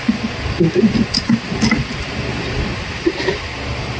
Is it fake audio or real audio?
real